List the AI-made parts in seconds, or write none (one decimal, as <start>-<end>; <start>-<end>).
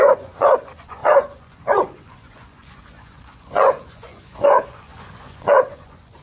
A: 0.0-6.2